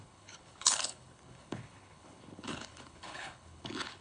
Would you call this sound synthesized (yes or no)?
yes